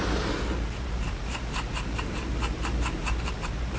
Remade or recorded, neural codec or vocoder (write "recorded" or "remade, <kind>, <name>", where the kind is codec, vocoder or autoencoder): remade, vocoder, BigVGAN v2